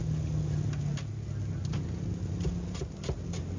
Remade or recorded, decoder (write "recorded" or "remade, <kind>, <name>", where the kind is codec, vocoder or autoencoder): recorded